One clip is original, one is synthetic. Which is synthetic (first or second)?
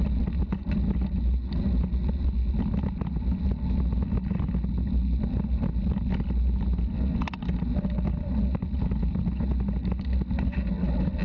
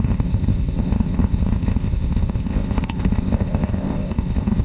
second